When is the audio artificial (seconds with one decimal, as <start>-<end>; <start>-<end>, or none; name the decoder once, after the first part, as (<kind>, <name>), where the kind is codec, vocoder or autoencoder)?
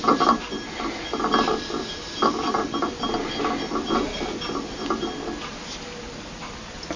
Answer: none